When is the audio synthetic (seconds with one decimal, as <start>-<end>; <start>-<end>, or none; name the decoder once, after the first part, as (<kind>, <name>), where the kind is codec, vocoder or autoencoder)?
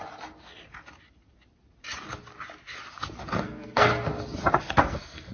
3.2-3.9 (codec, SNAC); 4.6-5.3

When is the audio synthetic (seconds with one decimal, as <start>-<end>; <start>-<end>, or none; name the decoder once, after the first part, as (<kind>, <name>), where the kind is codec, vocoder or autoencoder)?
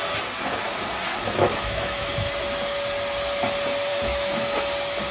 1.2-2.3 (autoencoder, DAC-VAE); 3.9-4.6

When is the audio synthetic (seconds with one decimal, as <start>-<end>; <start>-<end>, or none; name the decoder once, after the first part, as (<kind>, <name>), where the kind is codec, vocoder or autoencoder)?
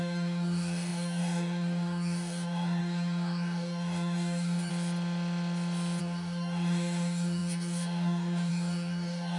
0.0-4.7 (codec, DAC); 6.0-9.4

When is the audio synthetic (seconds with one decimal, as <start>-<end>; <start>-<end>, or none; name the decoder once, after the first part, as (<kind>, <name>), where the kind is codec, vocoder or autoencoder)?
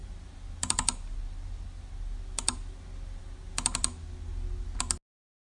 none